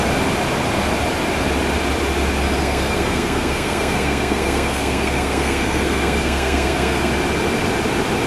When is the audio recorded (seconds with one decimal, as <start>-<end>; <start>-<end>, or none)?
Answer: 0.0-2.6; 7.1-8.3